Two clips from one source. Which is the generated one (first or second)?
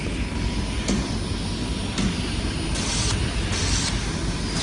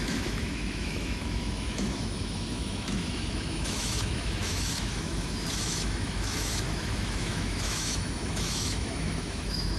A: second